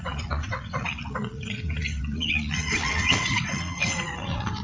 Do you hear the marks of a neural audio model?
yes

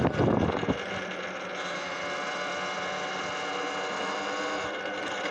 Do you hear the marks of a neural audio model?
no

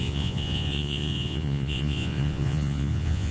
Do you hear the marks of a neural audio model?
yes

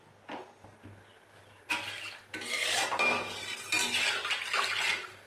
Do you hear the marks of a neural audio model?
no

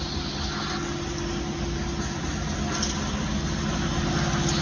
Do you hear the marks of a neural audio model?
no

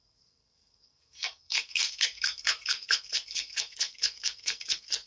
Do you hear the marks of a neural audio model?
yes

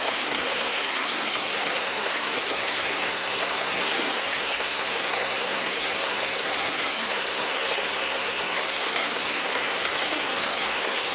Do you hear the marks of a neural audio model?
yes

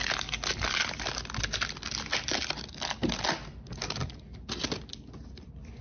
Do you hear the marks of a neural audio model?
no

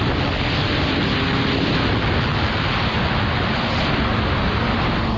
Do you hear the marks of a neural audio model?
no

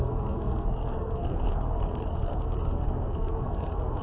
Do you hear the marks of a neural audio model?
yes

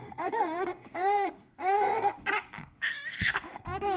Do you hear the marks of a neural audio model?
yes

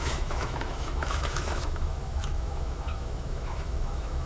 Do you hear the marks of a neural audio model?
yes